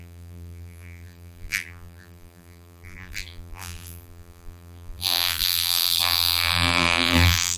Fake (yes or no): yes